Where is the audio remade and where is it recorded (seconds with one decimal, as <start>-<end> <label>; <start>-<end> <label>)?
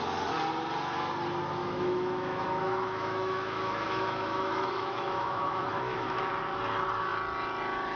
0.0-1.6 recorded; 1.6-6.3 remade; 6.3-8.0 recorded